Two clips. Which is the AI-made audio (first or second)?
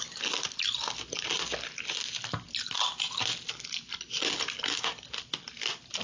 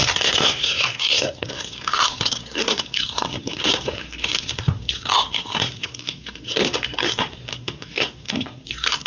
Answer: second